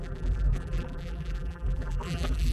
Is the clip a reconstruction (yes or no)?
yes